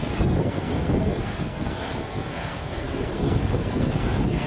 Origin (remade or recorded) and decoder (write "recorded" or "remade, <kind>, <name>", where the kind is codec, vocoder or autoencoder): remade, codec, SNAC